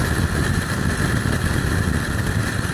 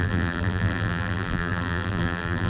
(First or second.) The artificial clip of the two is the second